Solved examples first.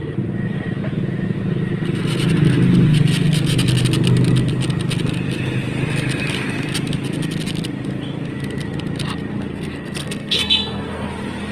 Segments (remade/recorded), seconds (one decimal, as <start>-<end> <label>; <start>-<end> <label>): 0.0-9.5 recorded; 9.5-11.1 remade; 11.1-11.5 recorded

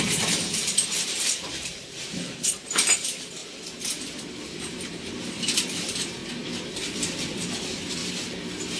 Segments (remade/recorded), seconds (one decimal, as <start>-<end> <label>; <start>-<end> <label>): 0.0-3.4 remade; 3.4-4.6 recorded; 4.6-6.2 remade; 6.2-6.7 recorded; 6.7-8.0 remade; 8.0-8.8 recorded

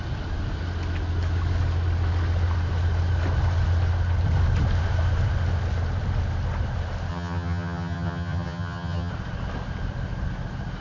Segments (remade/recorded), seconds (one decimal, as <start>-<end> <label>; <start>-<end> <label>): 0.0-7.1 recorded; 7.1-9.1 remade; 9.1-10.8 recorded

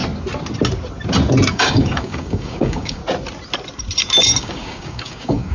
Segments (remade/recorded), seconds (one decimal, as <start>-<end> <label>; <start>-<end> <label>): 0.0-1.5 recorded; 1.5-3.0 remade; 3.0-4.4 recorded; 4.4-5.5 remade

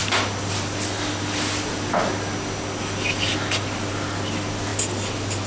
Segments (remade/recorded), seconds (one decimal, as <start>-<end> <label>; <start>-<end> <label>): 0.0-5.5 recorded

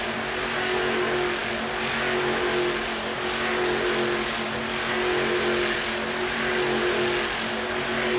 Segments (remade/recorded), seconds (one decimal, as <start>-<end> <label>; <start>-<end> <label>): 0.0-8.2 recorded

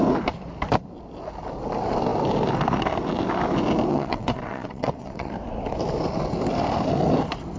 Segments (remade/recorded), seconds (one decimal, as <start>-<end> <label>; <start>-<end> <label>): 0.0-3.9 recorded; 3.9-5.3 remade; 5.3-7.6 recorded

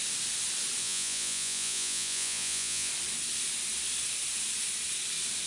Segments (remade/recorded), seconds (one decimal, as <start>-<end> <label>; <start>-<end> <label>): 0.0-0.8 recorded; 0.8-2.9 remade; 2.9-5.5 recorded